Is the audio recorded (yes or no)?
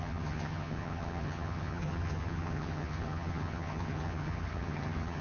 no